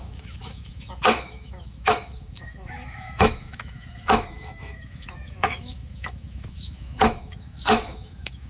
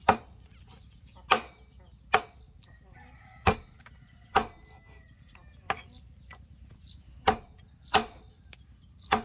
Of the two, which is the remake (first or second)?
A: first